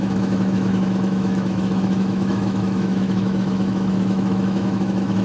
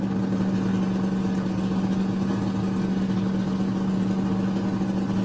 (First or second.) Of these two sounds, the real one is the second